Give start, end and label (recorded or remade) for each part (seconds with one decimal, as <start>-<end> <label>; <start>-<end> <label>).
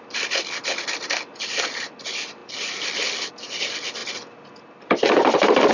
0.0-5.7 recorded